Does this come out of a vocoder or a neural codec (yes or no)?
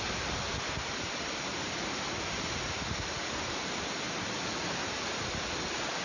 no